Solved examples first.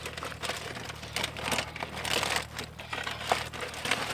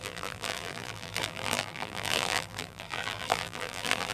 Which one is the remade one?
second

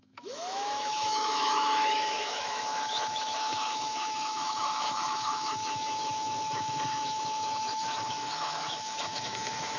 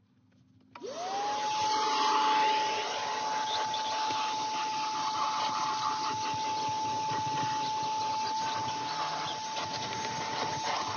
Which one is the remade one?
first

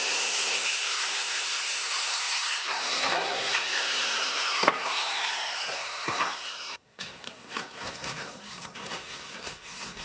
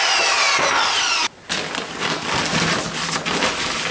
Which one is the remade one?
first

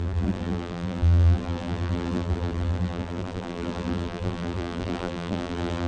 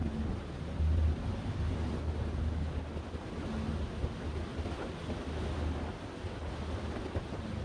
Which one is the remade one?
first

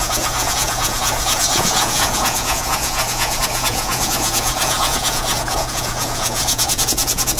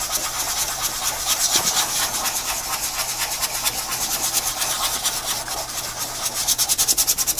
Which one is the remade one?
first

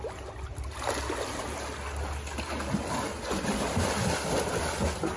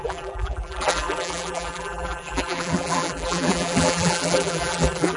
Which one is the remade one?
second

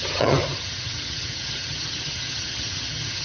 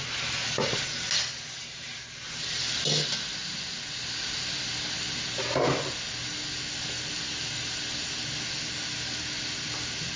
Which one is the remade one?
first